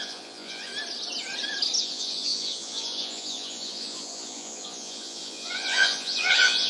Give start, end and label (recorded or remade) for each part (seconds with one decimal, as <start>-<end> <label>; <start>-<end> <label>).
0.0-0.7 remade; 0.7-1.8 recorded; 1.8-6.7 remade